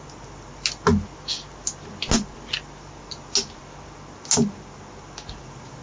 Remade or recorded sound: recorded